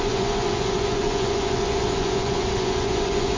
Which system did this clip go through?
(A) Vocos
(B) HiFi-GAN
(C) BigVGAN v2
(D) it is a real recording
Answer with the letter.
A